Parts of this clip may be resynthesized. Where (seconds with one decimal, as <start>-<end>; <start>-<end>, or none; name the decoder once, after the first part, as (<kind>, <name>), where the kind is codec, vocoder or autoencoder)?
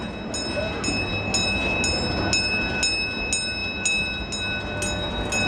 none